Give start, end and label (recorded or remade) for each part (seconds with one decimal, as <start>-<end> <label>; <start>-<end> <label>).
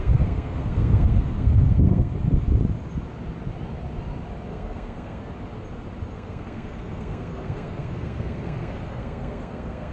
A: 0.0-2.1 remade; 2.1-4.5 recorded; 4.5-5.2 remade; 5.2-6.1 recorded; 6.1-9.9 remade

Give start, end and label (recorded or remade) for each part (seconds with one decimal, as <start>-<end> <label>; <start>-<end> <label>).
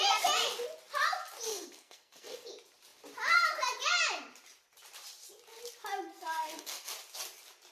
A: 0.0-1.5 recorded; 1.5-2.5 remade; 2.5-6.1 recorded; 6.1-6.9 remade; 6.9-7.7 recorded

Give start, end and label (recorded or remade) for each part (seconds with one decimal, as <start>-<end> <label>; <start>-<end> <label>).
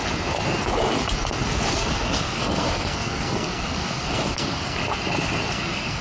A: 0.0-1.7 recorded; 1.7-4.8 remade; 4.8-5.5 recorded; 5.5-6.0 remade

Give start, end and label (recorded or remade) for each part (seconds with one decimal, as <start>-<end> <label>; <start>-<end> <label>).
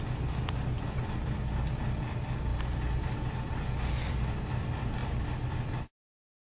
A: 0.0-6.6 recorded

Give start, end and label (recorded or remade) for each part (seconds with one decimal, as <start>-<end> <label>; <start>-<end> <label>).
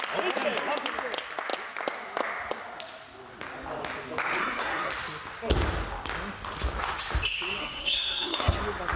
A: 0.0-4.4 recorded; 4.4-4.9 remade; 4.9-7.6 recorded; 7.6-8.6 remade; 8.6-9.0 recorded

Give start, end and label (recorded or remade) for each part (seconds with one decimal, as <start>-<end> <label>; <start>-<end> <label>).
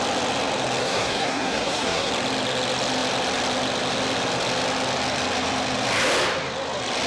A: 0.0-0.8 recorded; 0.8-2.1 remade; 2.1-7.1 recorded